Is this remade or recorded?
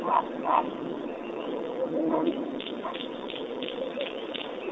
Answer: remade